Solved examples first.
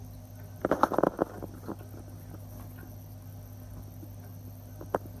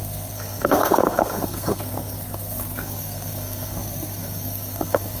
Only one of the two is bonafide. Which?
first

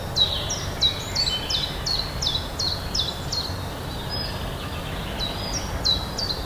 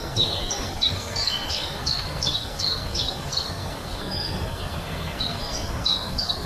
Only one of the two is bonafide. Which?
first